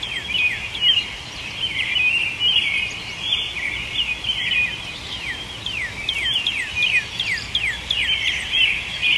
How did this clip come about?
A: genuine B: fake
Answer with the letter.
A